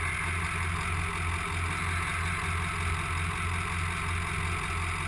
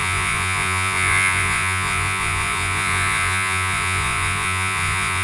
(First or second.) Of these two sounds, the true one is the first